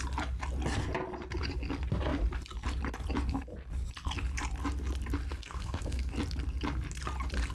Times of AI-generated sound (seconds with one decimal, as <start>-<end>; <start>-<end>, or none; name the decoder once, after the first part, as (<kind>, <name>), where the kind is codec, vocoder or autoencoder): 5.3-6.1 (codec, SNAC)